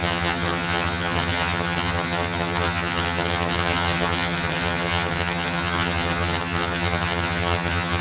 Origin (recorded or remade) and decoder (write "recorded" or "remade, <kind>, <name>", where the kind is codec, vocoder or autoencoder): remade, vocoder, HiFi-GAN